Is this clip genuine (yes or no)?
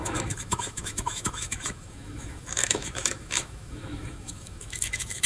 no